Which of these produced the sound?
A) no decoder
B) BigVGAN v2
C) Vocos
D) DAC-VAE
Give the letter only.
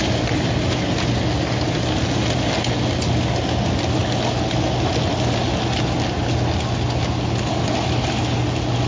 A